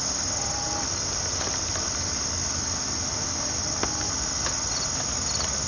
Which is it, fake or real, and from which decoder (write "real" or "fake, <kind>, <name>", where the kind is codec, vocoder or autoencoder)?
real